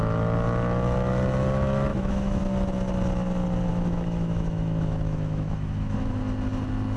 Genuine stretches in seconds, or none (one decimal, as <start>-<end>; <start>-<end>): 0.0-1.9; 2.4-3.7; 6.2-7.0